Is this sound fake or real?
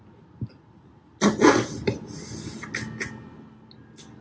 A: real